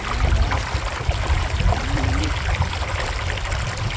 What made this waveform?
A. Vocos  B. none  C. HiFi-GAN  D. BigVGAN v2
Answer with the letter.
B